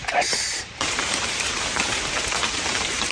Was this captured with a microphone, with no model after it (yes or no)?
no